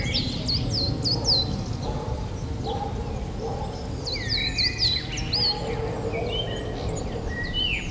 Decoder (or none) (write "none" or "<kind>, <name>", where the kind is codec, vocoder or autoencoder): none